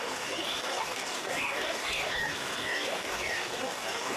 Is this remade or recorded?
remade